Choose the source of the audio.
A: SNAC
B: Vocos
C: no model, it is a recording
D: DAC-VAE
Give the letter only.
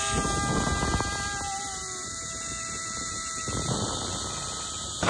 C